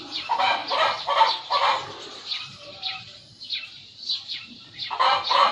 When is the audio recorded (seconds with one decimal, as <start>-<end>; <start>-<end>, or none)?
none